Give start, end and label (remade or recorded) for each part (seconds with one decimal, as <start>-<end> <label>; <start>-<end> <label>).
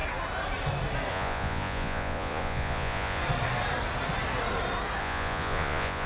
0.0-1.1 recorded; 1.1-3.2 remade; 3.2-5.0 recorded; 5.0-6.1 remade